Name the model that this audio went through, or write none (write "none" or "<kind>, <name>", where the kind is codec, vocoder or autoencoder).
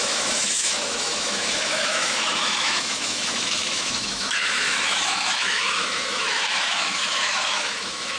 autoencoder, DAC-VAE